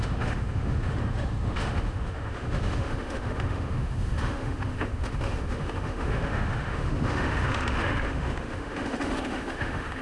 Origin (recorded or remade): remade